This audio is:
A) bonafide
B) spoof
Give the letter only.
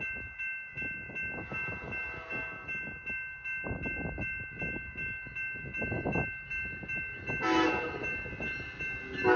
A